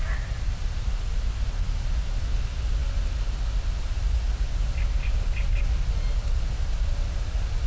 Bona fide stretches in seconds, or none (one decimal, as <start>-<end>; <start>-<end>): 0.0-7.7